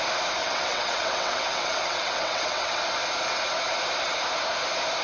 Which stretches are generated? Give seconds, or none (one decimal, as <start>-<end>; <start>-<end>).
0.4-2.8